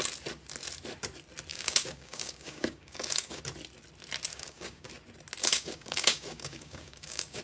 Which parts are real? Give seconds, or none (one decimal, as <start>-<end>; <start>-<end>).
0.0-1.5; 3.4-4.3; 4.9-5.4